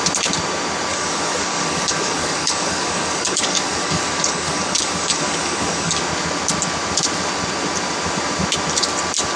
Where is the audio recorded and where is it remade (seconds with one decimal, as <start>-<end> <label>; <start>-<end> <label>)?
0.0-0.9 recorded; 0.9-6.0 remade; 6.0-9.4 recorded